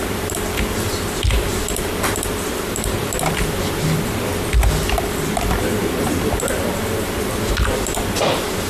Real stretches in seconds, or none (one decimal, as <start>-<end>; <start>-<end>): 4.3-4.9